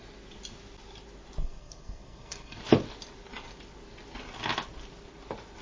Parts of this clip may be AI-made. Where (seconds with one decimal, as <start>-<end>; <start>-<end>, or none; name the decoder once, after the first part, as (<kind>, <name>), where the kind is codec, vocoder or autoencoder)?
1.4-2.6 (codec, SNAC)